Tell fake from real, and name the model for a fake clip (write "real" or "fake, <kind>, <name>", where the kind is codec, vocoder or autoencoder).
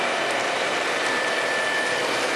real